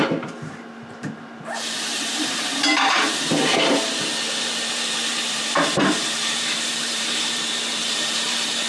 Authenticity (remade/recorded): remade